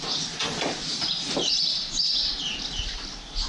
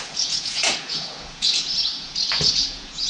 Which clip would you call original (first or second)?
first